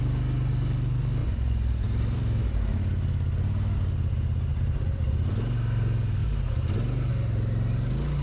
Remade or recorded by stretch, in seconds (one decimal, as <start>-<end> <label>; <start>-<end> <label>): 0.0-1.2 recorded; 1.2-2.6 remade; 2.6-4.5 recorded; 4.5-5.1 remade; 5.1-8.2 recorded